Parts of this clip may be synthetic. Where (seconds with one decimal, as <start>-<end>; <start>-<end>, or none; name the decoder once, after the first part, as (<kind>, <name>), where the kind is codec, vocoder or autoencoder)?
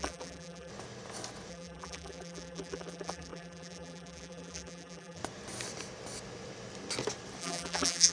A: 0.0-0.7 (vocoder, BigVGAN v2); 1.5-5.2; 7.4-8.1